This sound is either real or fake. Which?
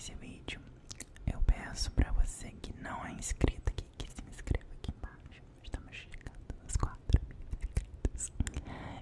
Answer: real